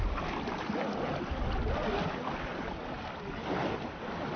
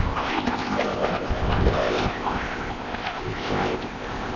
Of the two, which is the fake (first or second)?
second